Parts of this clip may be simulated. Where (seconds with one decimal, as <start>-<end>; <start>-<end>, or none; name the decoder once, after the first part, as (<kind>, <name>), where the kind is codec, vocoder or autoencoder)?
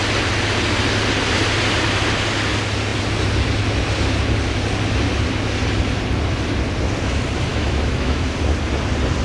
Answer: 7.5-8.2 (autoencoder, DAC-VAE)